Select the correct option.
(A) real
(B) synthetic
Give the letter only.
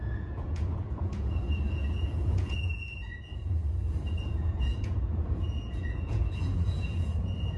B